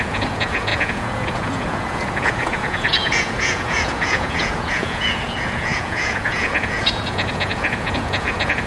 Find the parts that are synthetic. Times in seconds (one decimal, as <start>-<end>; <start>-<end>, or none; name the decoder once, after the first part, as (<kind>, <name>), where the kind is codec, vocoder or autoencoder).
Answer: 0.0-8.7 (vocoder, Vocos)